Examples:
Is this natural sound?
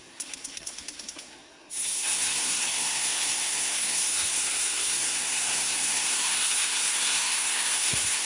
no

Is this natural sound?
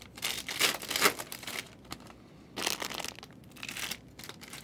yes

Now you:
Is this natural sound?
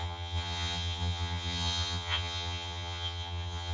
no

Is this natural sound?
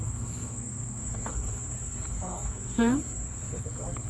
no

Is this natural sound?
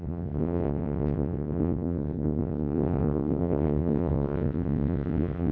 no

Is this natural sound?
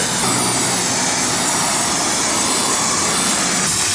yes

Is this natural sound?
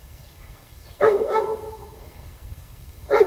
no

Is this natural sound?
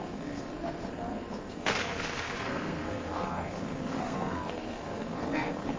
no